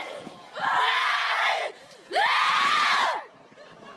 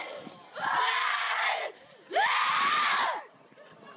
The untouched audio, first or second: second